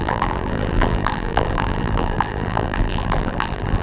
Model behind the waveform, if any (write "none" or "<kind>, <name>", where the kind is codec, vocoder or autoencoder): vocoder, BigVGAN v2